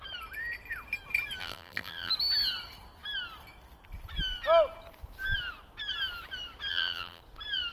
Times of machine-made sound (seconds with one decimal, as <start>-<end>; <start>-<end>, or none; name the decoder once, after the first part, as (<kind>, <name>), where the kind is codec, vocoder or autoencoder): 1.4-2.1 (vocoder, BigVGAN v2); 6.7-7.2